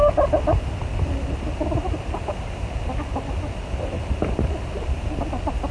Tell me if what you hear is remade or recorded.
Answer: recorded